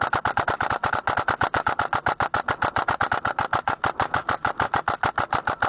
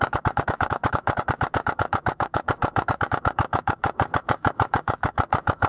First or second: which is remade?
second